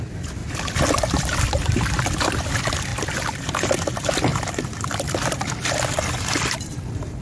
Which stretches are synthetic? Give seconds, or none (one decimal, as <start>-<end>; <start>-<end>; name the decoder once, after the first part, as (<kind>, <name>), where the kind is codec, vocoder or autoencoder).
0.4-2.4 (vocoder, BigVGAN v2); 4.3-6.7

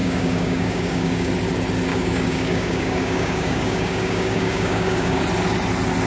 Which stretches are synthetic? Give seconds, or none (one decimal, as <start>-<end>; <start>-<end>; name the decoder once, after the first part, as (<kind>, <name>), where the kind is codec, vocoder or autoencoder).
0.0-1.3 (codec, DAC); 1.9-5.2

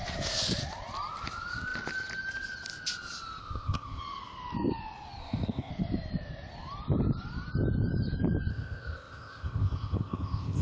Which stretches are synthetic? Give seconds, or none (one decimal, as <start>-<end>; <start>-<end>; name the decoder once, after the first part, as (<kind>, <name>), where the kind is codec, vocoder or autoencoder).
3.4-4.0 (codec, ZipCodec); 5.2-5.7; 8.5-10.6

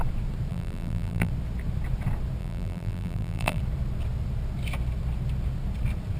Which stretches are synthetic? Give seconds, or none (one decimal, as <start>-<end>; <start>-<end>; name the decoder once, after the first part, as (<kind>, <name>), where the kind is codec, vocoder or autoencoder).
0.5-1.3 (vocoder, BigVGAN v2); 2.4-3.6

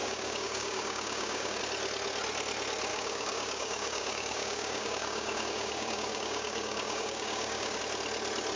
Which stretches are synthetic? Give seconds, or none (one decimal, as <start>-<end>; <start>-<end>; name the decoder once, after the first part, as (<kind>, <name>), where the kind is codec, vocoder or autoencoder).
0.0-1.6 (codec, DAC); 2.9-7.8

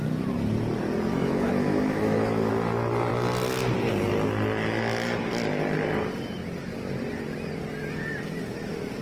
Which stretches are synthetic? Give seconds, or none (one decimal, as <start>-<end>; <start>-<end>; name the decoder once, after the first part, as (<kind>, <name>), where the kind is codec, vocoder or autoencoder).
1.1-2.5 (autoencoder, DAC-VAE)

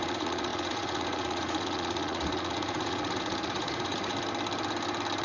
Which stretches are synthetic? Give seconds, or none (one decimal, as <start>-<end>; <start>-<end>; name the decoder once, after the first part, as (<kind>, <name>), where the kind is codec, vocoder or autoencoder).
0.0-4.1 (vocoder, Vocos)